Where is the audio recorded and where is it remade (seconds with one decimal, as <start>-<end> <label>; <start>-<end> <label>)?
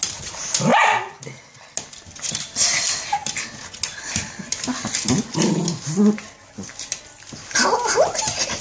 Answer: 0.0-8.6 recorded